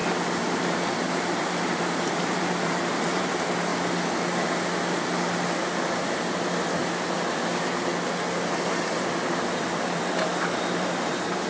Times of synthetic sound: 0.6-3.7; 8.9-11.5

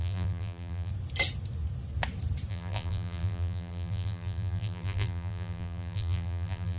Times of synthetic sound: 0.0-0.9; 2.5-6.8

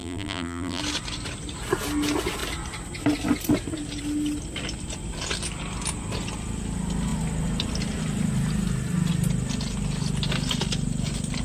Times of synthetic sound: 0.0-0.8

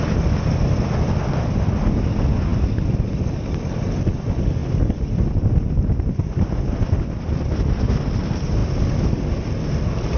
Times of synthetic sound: 4.6-5.3

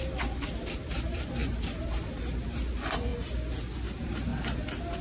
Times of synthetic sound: 0.0-3.1; 3.9-4.3

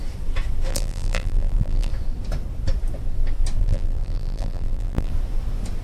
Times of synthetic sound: 0.7-1.9; 3.6-5.1